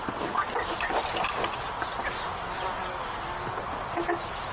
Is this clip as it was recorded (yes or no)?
yes